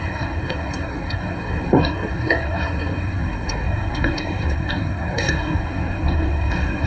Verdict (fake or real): fake